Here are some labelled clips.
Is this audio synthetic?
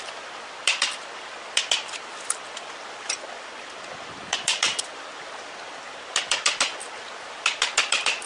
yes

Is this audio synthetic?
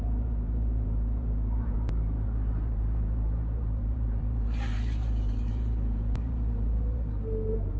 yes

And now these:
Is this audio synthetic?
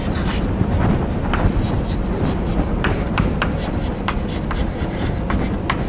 yes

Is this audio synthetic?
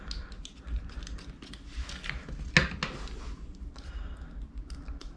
no